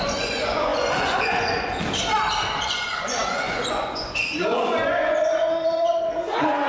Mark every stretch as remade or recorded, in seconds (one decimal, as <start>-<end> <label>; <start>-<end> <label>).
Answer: 0.0-1.8 remade; 1.8-2.6 recorded; 2.6-6.7 remade